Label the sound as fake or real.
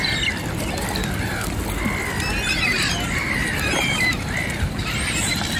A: fake